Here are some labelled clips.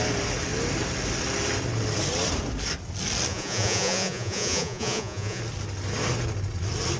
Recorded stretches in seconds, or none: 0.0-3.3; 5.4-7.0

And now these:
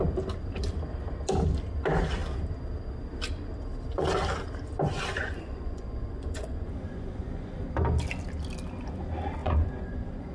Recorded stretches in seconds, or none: 0.0-5.2; 7.6-9.4

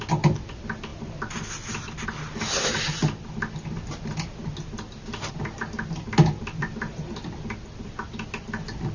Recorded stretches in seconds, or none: 0.0-8.9

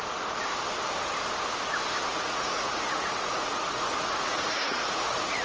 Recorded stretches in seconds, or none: 0.0-2.1

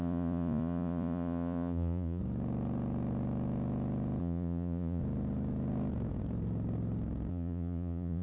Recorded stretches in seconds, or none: 2.2-4.2; 5.0-7.3